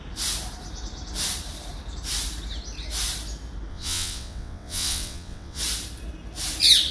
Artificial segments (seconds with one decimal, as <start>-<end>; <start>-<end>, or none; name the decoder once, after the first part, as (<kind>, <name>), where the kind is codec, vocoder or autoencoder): 3.7-5.6 (vocoder, WaveNeXt)